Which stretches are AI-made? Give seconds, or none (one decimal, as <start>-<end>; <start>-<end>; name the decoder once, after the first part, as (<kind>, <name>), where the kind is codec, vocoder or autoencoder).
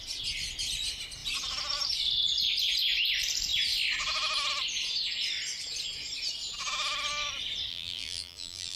7.7-8.8 (vocoder, BigVGAN v2)